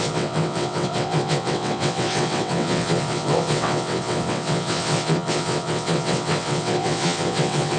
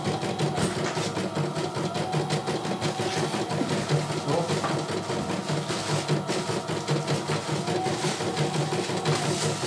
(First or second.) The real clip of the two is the second